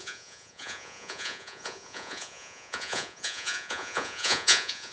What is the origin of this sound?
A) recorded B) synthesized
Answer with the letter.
B